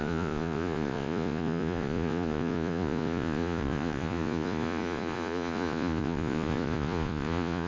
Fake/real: fake